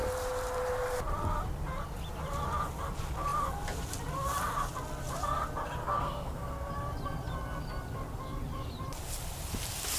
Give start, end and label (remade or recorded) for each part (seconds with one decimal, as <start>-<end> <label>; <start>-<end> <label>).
0.0-5.8 recorded; 5.8-6.7 remade; 6.7-10.0 recorded